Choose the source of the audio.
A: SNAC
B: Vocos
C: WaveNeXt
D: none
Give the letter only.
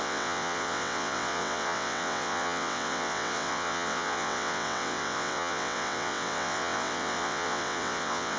C